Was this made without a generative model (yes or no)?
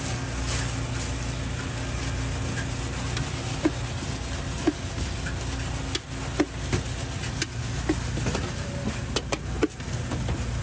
yes